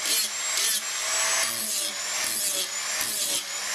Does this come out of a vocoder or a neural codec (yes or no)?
no